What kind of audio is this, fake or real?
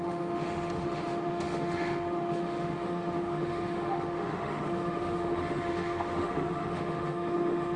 fake